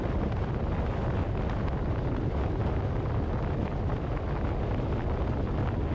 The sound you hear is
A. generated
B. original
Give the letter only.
B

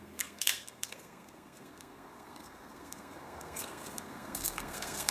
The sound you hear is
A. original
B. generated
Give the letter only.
B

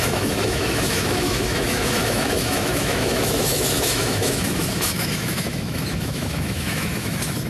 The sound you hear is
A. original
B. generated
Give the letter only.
B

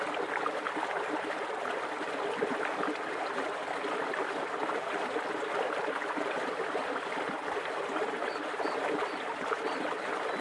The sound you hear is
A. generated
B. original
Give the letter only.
B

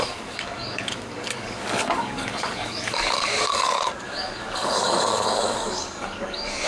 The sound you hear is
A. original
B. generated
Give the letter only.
B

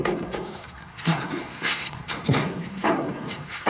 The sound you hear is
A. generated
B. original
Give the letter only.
A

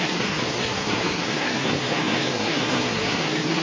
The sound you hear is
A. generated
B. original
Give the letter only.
A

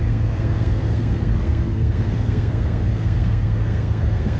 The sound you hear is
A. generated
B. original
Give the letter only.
A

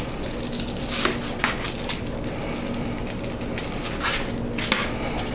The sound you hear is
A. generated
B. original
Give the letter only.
B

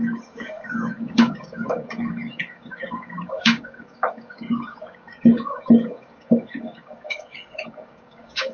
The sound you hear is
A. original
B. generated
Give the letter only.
B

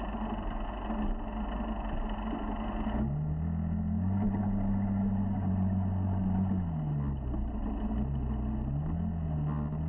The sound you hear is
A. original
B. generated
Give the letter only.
A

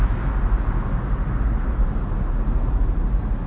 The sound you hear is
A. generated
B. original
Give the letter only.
B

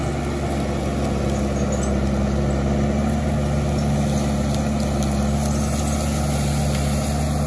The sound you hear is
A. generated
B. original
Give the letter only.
B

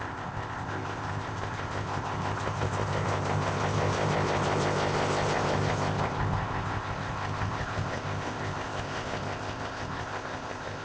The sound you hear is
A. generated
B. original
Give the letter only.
A